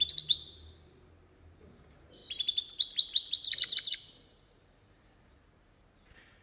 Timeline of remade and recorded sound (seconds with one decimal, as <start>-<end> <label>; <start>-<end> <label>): 0.0-6.4 recorded